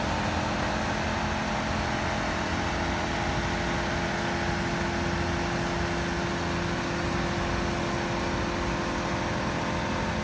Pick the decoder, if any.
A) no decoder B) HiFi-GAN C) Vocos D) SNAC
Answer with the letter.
A